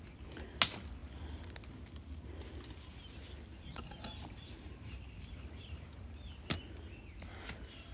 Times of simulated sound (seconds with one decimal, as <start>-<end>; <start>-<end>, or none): 3.5-6.2